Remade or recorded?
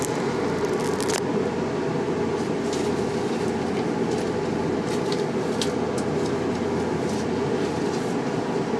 recorded